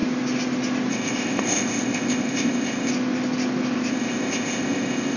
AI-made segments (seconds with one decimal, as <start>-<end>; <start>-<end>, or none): 0.9-2.9; 3.9-5.2

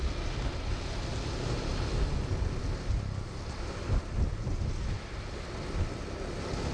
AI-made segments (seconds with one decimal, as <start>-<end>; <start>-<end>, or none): none

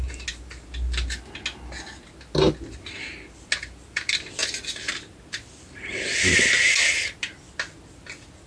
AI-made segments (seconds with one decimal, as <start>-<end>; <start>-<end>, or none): none

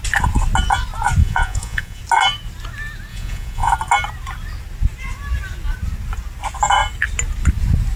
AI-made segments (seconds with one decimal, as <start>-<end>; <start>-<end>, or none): 1.2-2.0; 3.1-3.7

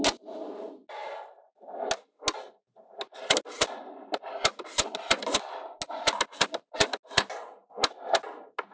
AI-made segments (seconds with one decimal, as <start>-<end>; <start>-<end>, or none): none

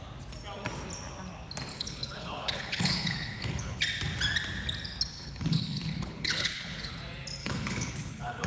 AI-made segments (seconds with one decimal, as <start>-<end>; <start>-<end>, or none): 1.7-3.8; 5.1-7.0; 7.4-8.5

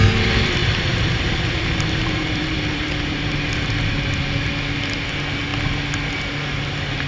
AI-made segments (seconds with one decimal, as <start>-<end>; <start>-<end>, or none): 0.6-3.5

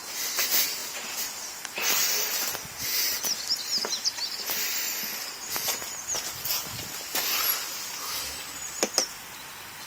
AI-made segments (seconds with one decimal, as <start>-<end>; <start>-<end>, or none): none